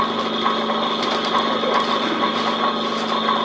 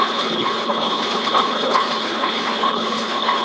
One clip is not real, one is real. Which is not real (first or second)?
second